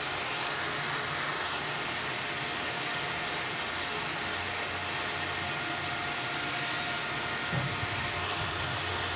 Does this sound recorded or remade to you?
recorded